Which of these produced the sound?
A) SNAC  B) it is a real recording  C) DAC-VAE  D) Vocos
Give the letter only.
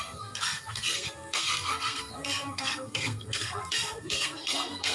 A